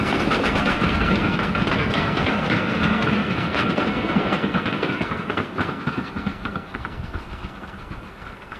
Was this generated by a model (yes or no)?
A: yes